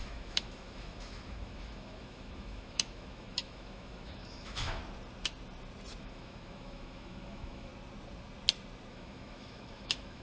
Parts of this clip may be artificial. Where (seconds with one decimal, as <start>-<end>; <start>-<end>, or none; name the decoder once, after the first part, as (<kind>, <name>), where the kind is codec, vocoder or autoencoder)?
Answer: 0.0-4.8 (autoencoder, DAC-VAE); 6.0-7.7; 8.9-10.2